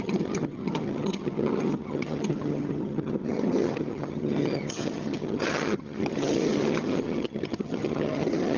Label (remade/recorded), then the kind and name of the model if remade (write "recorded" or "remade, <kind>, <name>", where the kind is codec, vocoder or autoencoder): remade, vocoder, HiFi-GAN